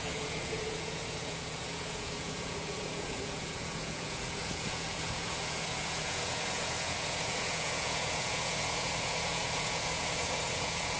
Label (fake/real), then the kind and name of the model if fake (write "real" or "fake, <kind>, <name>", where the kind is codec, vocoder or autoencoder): fake, vocoder, Vocos